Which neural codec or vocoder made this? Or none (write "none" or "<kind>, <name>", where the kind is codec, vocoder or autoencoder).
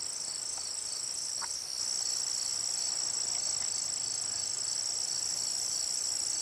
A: none